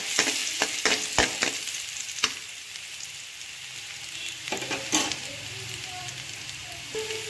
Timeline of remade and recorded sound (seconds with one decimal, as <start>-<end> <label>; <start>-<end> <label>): 0.0-0.4 remade; 0.4-1.4 recorded; 1.4-2.0 remade; 2.0-5.0 recorded; 5.0-6.6 remade; 6.6-7.3 recorded